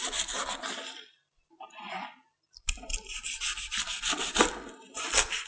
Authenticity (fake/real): fake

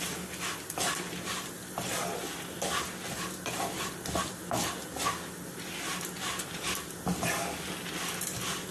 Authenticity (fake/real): real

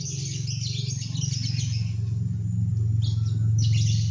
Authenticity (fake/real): real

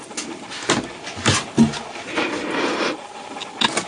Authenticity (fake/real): real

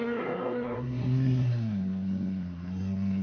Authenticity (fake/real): fake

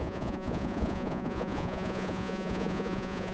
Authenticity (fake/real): fake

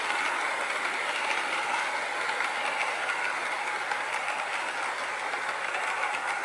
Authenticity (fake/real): real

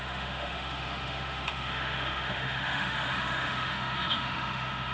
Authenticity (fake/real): fake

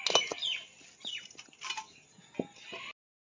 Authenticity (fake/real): real